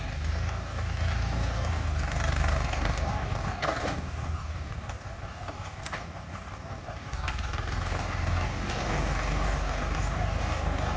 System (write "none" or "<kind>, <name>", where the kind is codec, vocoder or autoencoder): codec, DAC